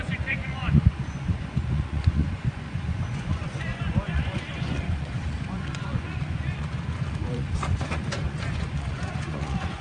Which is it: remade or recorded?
remade